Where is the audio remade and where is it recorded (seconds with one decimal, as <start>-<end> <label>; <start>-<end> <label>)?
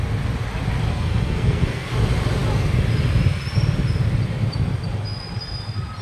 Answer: 0.0-0.9 recorded; 0.9-1.9 remade; 1.9-6.0 recorded